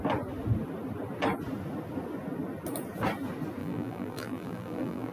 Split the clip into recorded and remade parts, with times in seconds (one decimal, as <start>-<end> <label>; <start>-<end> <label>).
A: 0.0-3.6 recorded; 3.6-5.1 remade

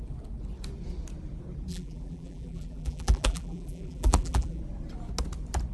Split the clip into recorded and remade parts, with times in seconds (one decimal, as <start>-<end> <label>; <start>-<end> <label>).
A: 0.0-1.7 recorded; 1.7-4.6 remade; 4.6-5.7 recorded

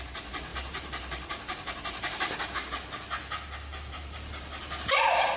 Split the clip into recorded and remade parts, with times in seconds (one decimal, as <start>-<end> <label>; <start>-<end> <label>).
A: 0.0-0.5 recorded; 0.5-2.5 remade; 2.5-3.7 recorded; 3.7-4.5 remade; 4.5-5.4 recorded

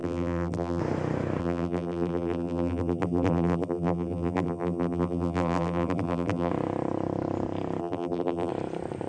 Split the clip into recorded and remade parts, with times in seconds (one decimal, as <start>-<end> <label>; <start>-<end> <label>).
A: 0.0-0.8 remade; 0.8-1.4 recorded; 1.4-6.5 remade; 6.5-7.8 recorded; 7.8-8.5 remade; 8.5-9.1 recorded

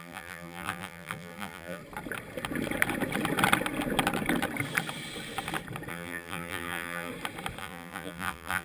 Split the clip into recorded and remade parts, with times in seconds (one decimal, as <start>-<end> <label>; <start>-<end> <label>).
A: 0.0-1.8 remade; 1.8-5.9 recorded; 5.9-7.1 remade; 7.1-7.6 recorded; 7.6-8.6 remade